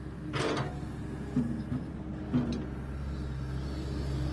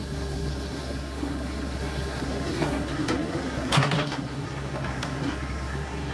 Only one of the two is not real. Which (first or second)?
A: second